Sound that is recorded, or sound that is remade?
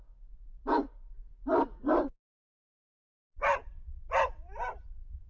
recorded